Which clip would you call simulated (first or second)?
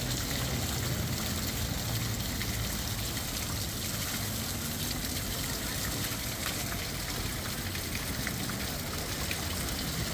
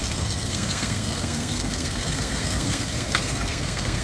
second